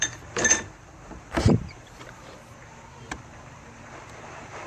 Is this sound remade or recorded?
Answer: remade